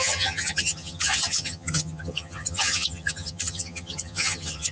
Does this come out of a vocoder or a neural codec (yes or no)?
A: yes